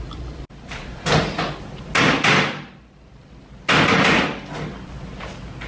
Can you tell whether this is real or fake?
real